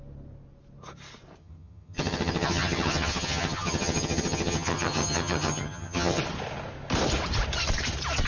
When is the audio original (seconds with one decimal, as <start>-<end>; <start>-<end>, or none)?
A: 0.0-1.4; 6.2-8.3